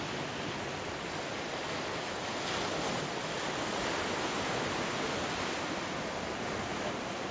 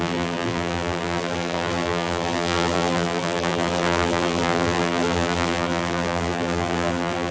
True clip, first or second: first